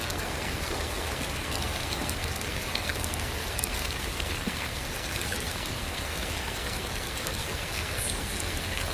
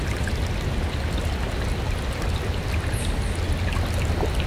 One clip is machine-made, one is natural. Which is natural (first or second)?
second